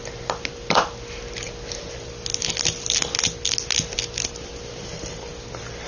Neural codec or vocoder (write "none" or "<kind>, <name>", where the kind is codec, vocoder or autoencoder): none